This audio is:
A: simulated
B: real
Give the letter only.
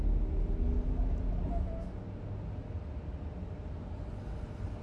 B